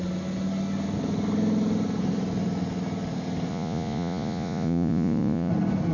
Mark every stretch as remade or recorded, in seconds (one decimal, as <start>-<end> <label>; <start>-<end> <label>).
0.0-3.5 recorded; 3.5-5.5 remade; 5.5-5.9 recorded